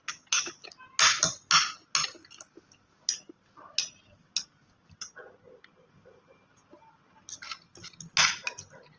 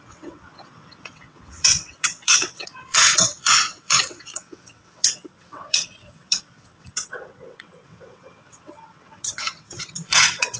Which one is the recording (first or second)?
first